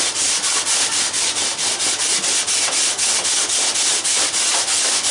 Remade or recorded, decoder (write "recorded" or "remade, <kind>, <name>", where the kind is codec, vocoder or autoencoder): recorded